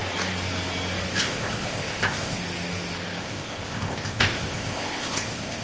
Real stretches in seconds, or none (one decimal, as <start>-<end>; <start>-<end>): 0.0-1.2; 2.4-3.2